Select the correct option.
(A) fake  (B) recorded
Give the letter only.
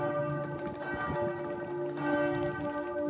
B